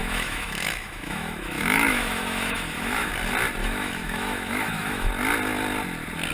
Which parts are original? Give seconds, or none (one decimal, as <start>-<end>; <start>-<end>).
3.1-3.6; 5.1-6.3